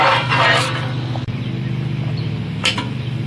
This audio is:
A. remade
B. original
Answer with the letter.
A